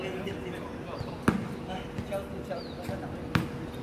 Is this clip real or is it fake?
real